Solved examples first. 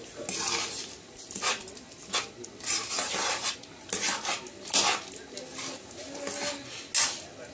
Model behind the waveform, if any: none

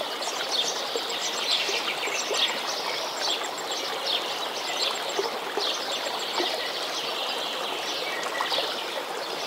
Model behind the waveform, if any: none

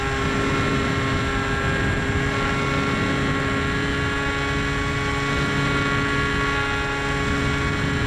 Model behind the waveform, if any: none